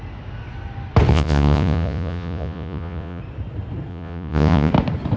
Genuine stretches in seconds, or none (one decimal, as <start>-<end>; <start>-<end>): 0.0-1.1; 3.2-3.9; 4.7-5.2